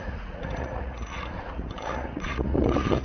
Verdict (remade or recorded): remade